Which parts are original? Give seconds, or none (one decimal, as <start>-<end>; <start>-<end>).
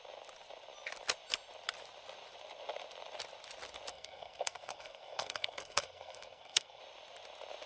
0.0-3.9; 6.8-7.7